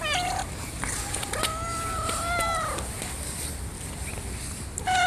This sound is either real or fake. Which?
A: real